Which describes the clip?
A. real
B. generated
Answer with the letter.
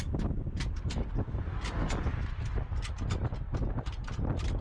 A